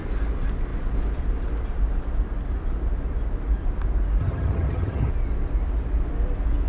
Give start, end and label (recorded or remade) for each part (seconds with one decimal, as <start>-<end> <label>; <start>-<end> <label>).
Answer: 0.0-4.2 recorded; 4.2-5.1 remade; 5.1-6.7 recorded